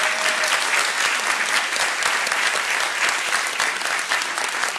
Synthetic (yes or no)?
no